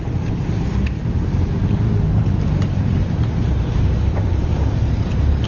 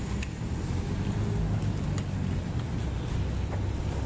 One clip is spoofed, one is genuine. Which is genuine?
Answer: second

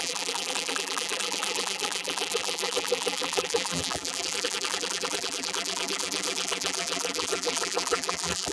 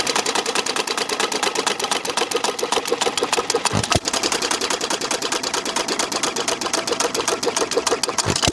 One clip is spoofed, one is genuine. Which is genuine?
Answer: second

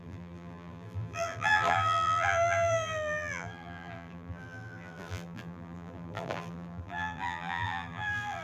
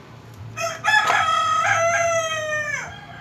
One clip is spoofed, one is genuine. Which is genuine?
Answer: second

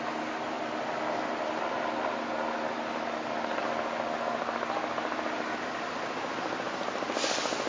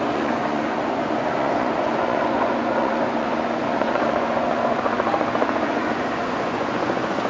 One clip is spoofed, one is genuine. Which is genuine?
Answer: first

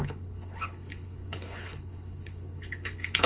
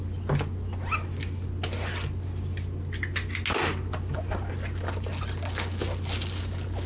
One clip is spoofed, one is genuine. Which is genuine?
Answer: second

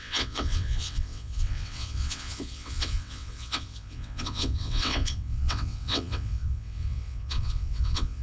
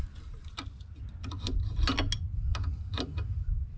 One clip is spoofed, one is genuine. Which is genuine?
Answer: second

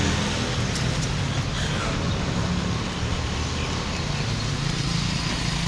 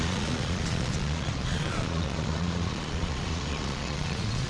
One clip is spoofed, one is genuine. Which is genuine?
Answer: first